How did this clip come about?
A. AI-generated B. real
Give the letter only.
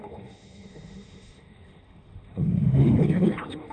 A